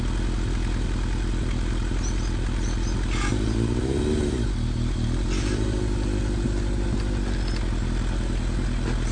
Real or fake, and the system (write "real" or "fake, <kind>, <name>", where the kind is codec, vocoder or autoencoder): real